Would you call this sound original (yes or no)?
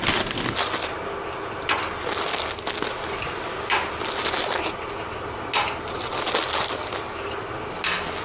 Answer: yes